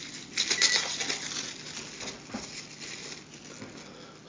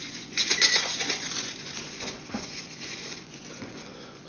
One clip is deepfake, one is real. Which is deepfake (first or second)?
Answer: second